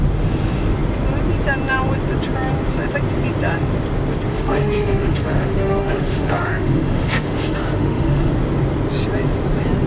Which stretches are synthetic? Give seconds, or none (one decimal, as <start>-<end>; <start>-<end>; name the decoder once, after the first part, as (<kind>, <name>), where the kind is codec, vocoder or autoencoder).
4.3-8.3 (autoencoder, DAC-VAE)